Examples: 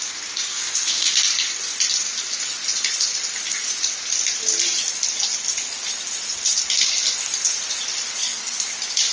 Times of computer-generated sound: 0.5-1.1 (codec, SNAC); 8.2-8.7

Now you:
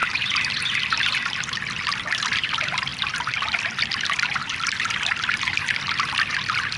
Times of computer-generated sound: none

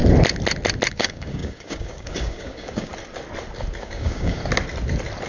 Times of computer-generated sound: 0.9-2.9 (codec, DAC); 3.8-4.4